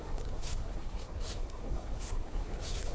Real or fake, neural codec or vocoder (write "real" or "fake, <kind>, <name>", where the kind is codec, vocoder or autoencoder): fake, codec, SNAC